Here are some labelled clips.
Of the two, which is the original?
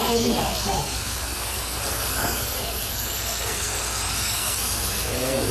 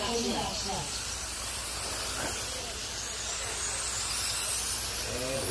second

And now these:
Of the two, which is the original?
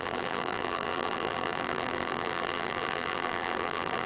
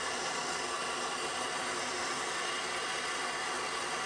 second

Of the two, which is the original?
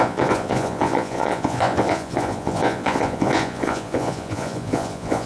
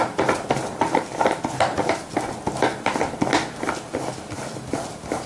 second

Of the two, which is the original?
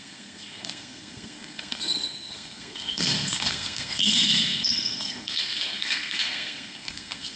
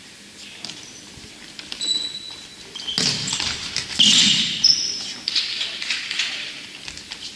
second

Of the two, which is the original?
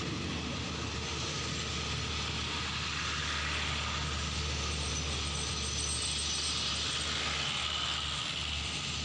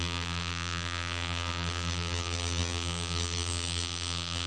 first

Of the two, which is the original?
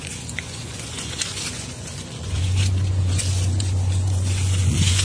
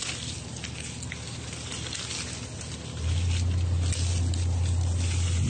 second